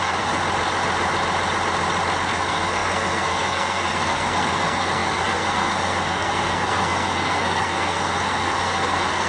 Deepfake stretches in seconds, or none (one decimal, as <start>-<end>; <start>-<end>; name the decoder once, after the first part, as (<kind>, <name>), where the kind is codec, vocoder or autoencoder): 0.0-0.4 (codec, SNAC); 2.2-9.3